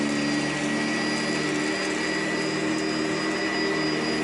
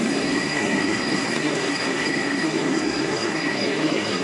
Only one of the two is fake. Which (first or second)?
second